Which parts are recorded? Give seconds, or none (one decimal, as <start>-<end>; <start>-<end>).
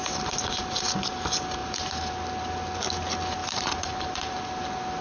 0.0-1.6; 2.1-3.4; 4.4-5.0